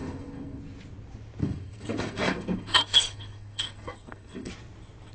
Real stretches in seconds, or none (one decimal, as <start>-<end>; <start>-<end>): 0.6-1.4; 4.5-5.1